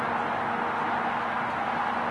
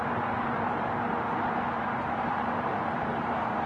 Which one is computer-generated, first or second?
second